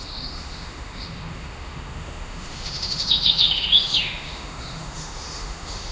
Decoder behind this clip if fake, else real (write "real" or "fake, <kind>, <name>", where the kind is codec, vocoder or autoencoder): fake, autoencoder, DAC-VAE